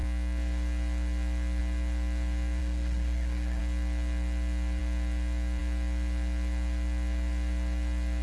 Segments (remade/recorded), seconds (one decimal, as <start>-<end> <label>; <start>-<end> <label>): 0.0-2.6 recorded; 2.6-3.6 remade; 3.6-8.2 recorded